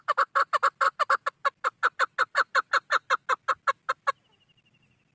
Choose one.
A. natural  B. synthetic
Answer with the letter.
A